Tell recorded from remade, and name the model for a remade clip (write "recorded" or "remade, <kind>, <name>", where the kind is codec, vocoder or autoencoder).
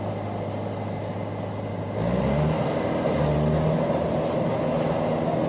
recorded